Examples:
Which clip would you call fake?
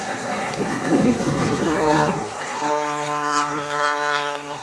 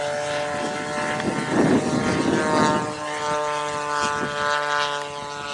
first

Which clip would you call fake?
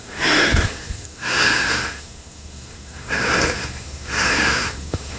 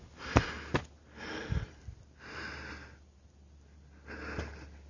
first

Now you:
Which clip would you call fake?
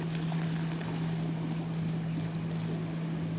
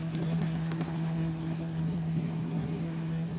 second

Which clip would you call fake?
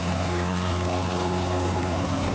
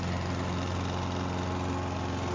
first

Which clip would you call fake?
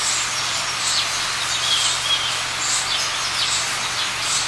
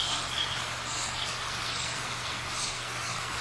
second